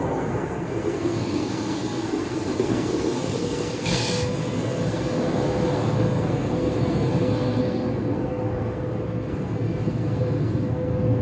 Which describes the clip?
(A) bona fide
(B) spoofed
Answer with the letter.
B